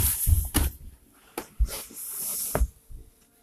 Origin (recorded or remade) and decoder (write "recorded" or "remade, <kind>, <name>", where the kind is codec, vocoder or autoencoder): recorded